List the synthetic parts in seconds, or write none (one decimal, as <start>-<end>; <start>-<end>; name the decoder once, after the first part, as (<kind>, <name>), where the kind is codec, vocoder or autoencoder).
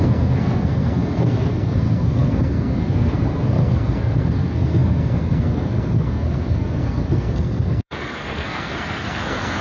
0.0-9.6 (codec, SNAC)